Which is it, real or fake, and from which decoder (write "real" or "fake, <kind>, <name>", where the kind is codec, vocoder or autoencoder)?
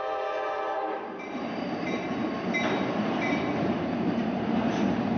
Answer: fake, vocoder, BigVGAN v2